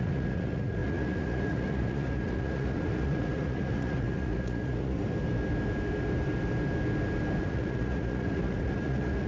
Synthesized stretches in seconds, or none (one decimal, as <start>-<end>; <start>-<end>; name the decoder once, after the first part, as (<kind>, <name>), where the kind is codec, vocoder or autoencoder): 0.0-5.0 (vocoder, Vocos); 7.4-9.3